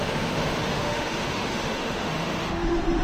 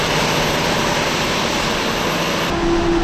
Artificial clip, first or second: first